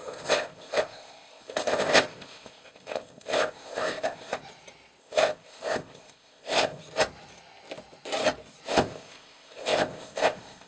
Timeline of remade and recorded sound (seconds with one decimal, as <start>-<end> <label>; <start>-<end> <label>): 0.0-4.4 remade; 4.4-5.0 recorded; 5.0-6.8 remade; 6.8-8.7 recorded; 8.7-10.7 remade